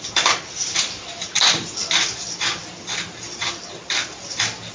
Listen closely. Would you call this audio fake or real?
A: real